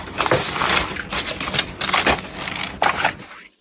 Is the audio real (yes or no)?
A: yes